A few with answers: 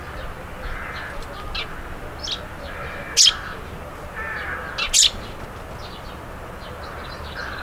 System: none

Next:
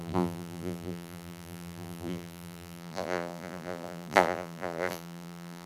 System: vocoder, BigVGAN v2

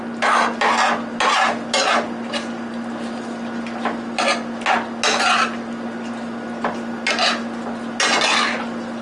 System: none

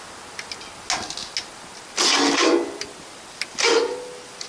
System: none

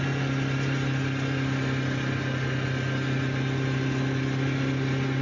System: none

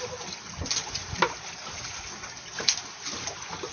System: none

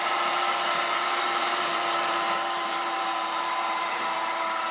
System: vocoder, BigVGAN v2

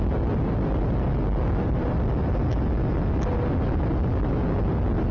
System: none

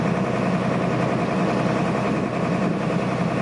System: none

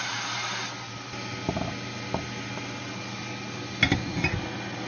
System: none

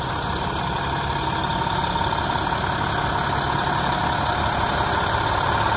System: none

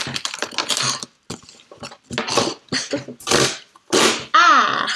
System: none